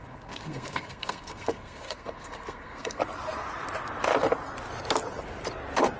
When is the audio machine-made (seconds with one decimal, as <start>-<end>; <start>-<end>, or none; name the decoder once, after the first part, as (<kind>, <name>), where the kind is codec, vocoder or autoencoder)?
0.0-3.0 (codec, SNAC)